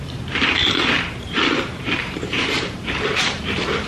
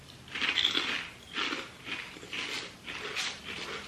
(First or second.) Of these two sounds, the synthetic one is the first